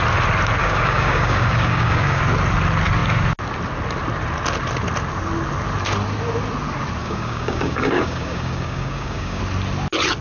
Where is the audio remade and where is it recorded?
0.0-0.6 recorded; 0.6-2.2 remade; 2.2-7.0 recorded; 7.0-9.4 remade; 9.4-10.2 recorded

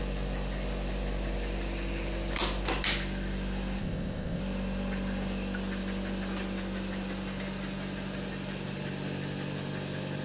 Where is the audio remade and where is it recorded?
0.0-3.8 recorded; 3.8-4.4 remade; 4.4-10.2 recorded

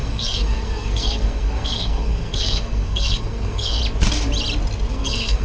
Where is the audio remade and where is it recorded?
0.0-3.8 remade; 3.8-4.9 recorded; 4.9-5.4 remade

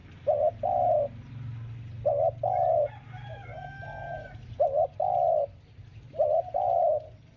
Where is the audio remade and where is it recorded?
0.0-7.4 recorded

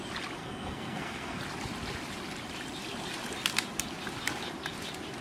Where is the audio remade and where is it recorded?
0.0-0.4 recorded; 0.4-1.4 remade; 1.4-5.2 recorded

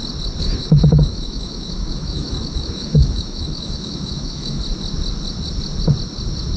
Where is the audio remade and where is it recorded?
0.0-0.6 recorded; 0.6-4.6 remade; 4.6-6.6 recorded

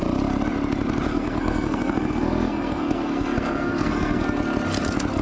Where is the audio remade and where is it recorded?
0.0-1.1 recorded; 1.1-4.2 remade; 4.2-5.2 recorded